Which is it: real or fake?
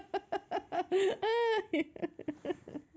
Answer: real